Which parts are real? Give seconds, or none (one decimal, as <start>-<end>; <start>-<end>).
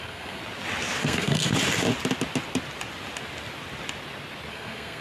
0.4-1.0; 1.5-4.5